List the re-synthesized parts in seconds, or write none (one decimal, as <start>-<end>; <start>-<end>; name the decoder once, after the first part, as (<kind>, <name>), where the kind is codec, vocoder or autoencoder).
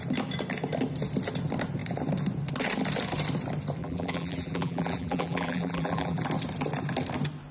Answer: 3.8-6.2 (vocoder, BigVGAN v2)